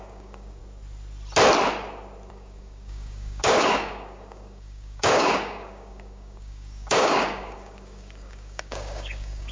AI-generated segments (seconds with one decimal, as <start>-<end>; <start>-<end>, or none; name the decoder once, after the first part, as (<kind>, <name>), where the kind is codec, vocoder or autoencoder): 0.0-0.6 (codec, DAC); 2.3-9.5